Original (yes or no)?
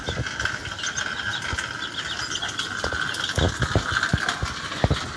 yes